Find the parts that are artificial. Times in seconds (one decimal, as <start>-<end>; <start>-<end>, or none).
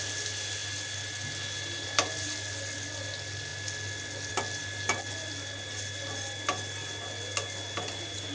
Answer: none